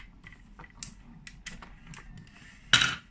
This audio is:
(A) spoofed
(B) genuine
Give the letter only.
B